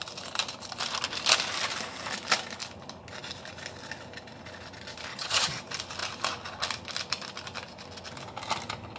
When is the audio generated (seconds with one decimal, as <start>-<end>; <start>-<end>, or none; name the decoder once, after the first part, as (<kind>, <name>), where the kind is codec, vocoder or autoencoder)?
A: 5.1-5.6 (vocoder, HiFi-GAN)